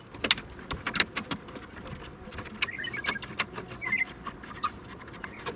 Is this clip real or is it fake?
real